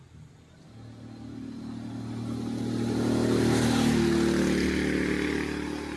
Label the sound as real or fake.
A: real